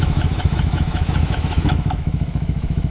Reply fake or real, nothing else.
fake